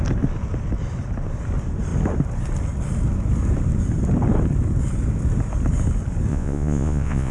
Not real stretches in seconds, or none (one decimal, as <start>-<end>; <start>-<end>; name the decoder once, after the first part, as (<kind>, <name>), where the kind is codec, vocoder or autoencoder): 6.3-7.3 (vocoder, Vocos)